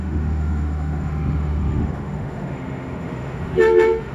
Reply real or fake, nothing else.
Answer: fake